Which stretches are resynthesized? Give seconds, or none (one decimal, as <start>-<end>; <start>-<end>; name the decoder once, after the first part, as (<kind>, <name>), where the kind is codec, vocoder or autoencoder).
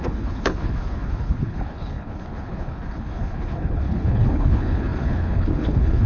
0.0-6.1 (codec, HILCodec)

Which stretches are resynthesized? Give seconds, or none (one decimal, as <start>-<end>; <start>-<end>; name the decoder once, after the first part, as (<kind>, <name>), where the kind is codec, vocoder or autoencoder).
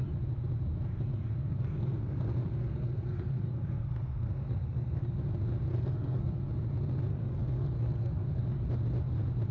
1.4-5.1 (codec, SNAC); 5.7-6.4; 7.1-8.4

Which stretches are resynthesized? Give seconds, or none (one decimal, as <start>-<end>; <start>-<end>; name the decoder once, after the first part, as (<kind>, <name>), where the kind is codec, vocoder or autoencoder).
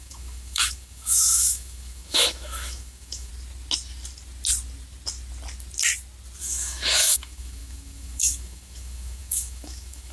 0.0-3.3 (autoencoder, DAC-VAE); 6.4-10.1